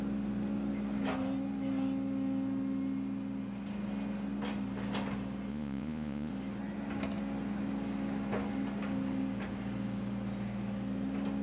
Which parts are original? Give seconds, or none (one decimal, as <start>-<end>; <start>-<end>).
0.0-5.5; 6.3-11.4